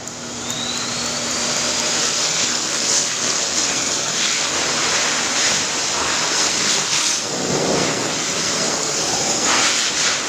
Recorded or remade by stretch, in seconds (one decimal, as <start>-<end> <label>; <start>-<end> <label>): 0.0-2.0 recorded; 2.0-4.6 remade; 4.6-6.0 recorded; 6.0-9.9 remade; 9.9-10.3 recorded